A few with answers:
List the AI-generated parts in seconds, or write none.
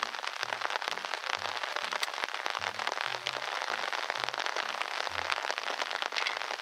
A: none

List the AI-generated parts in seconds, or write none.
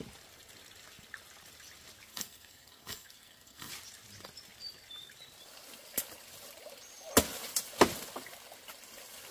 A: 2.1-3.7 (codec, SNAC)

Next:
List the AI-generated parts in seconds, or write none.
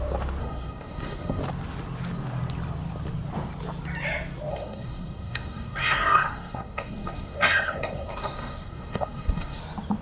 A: 0.4-1.4 (codec, SNAC); 4.5-9.6